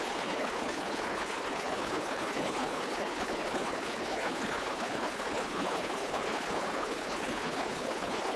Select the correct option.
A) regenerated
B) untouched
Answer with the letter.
A